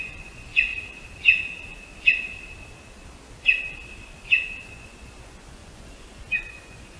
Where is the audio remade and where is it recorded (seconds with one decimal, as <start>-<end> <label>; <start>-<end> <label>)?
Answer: 0.0-0.7 remade; 0.7-4.6 recorded; 4.6-7.0 remade